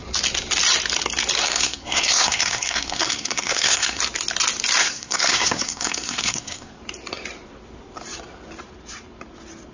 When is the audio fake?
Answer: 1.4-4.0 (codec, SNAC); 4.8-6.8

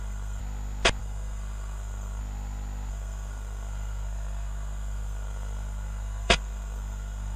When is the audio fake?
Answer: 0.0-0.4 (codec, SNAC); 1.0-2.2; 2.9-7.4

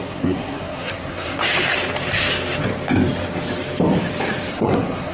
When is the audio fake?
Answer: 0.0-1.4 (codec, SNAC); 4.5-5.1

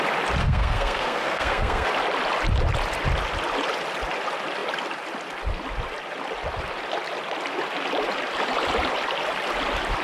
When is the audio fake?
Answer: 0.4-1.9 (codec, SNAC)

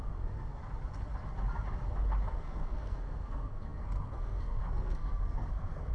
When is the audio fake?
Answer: 0.0-0.6 (codec, SNAC); 2.3-5.9

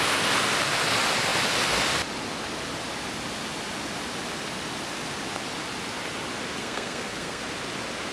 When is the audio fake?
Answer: 6.6-7.4 (codec, SNAC)